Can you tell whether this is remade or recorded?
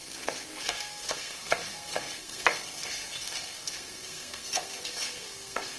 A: remade